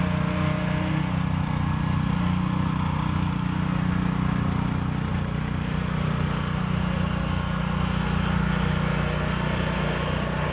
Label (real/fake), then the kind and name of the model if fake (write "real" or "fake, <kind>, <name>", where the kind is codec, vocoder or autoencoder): real